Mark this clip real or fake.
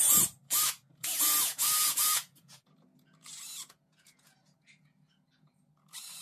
fake